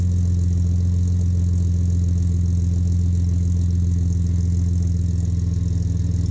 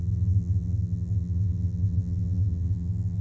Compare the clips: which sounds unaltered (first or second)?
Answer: first